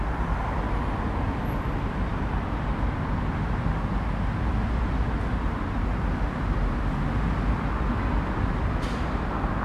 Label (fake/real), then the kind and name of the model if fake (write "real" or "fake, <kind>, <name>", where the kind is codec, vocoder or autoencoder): real